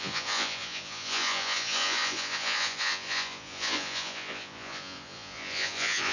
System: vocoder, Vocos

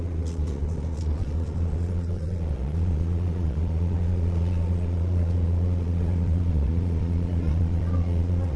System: vocoder, Vocos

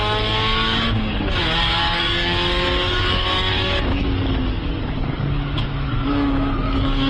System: codec, DAC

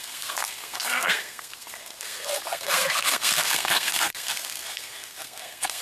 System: codec, SNAC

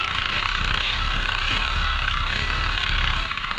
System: codec, DAC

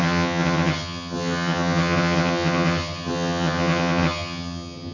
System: vocoder, HiFi-GAN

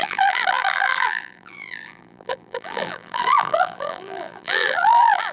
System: vocoder, BigVGAN v2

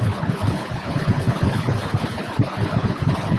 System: codec, HILCodec